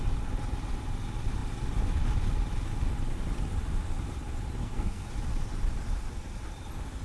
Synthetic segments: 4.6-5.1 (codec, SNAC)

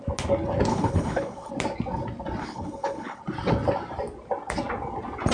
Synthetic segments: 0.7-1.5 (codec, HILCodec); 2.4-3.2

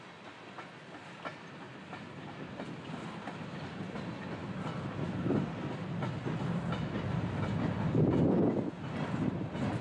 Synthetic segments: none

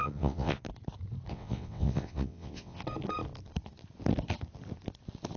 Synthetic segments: 0.0-0.6 (vocoder, WaveNeXt); 1.3-2.8

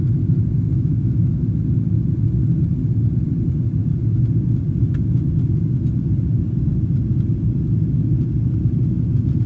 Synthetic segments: 0.7-1.4 (autoencoder, DAC-VAE)